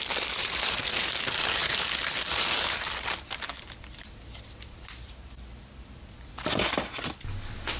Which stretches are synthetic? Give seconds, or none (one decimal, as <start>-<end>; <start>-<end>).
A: 0.4-0.9